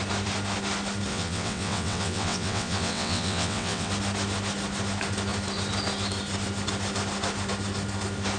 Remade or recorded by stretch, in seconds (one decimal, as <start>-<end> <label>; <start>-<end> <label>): 0.0-1.1 recorded; 1.1-3.9 remade; 3.9-8.4 recorded